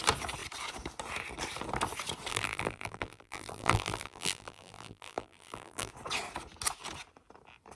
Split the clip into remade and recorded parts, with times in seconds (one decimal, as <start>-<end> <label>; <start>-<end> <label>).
0.0-2.3 recorded; 2.3-5.9 remade; 5.9-7.8 recorded